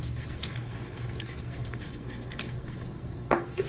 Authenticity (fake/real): fake